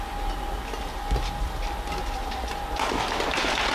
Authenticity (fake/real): real